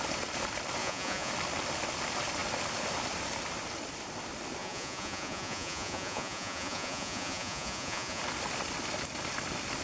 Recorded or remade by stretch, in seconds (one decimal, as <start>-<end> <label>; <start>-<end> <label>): 0.0-0.8 recorded; 0.8-1.3 remade; 1.3-4.6 recorded; 4.6-8.2 remade; 8.2-9.8 recorded